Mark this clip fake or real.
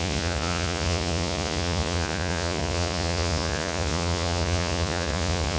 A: fake